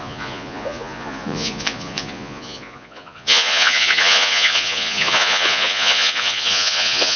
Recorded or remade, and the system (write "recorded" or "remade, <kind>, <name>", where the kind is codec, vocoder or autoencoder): remade, vocoder, Vocos